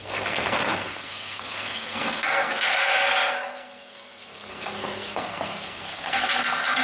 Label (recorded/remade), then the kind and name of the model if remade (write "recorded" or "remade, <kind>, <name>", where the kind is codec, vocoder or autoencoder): remade, codec, SNAC